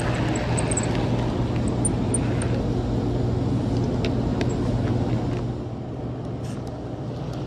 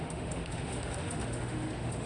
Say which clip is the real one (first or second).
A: first